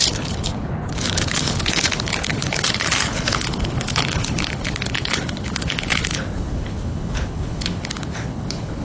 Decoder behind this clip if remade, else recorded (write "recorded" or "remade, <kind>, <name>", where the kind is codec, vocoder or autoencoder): remade, codec, HILCodec